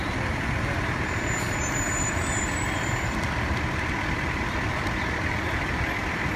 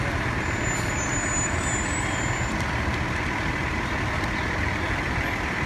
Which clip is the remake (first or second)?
first